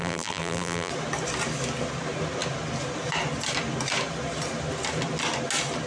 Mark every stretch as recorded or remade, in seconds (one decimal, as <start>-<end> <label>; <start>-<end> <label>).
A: 0.0-0.9 remade; 0.9-5.9 recorded